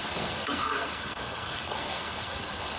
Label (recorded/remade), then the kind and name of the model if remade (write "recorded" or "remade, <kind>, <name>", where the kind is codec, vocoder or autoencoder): remade, codec, SNAC